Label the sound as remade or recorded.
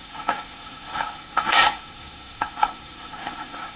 remade